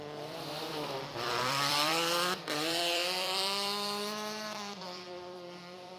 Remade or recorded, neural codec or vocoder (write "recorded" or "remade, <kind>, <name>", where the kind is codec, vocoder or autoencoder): remade, vocoder, BigVGAN v2